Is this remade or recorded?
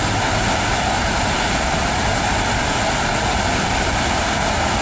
recorded